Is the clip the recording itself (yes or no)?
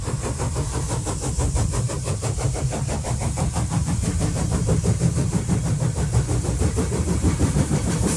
no